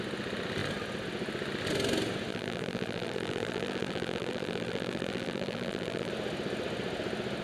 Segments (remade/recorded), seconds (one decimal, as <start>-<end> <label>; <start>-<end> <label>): 0.0-2.3 recorded; 2.3-6.1 remade; 6.1-7.4 recorded